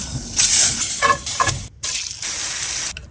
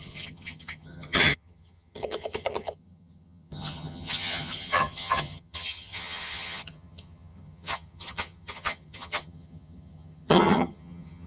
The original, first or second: first